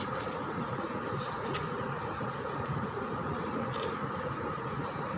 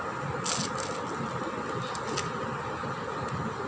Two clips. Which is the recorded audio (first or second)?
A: second